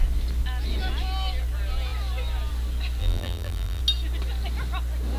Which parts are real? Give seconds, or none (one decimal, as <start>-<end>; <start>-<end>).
0.0-3.0; 3.8-5.2